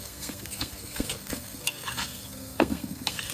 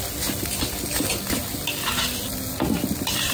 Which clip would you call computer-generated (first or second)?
first